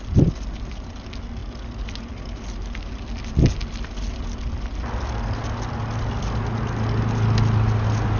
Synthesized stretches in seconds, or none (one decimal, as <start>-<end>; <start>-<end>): none